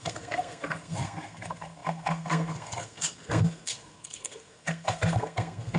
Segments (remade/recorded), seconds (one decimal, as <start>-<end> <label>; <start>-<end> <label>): 0.0-5.8 remade